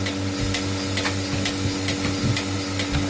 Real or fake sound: real